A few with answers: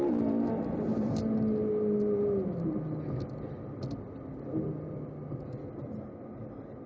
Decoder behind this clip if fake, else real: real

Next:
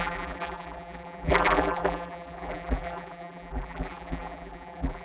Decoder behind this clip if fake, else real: fake, vocoder, BigVGAN v2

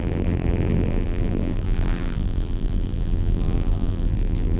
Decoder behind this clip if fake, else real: fake, vocoder, BigVGAN v2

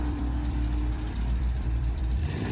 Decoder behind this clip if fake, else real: fake, vocoder, BigVGAN v2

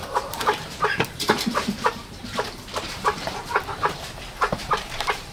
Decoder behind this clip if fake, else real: fake, vocoder, BigVGAN v2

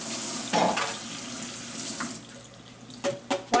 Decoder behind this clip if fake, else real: real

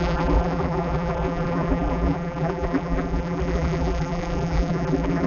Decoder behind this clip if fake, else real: fake, vocoder, BigVGAN v2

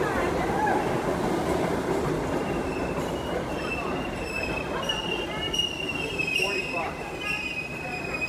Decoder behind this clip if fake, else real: fake, vocoder, BigVGAN v2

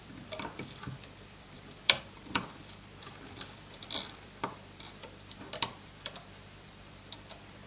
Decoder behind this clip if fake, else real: fake, vocoder, BigVGAN v2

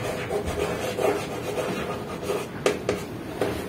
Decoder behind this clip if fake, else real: real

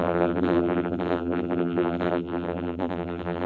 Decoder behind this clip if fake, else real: fake, vocoder, BigVGAN v2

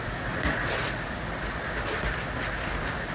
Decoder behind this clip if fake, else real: fake, vocoder, BigVGAN v2